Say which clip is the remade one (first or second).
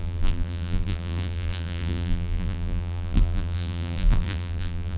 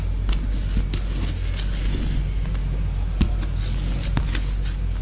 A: first